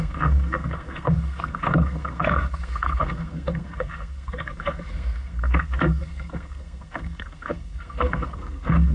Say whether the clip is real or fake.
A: fake